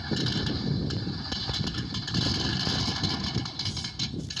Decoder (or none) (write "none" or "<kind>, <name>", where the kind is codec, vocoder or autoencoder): none